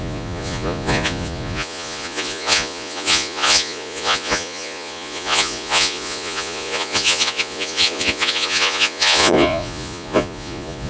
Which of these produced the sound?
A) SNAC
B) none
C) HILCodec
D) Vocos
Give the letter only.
D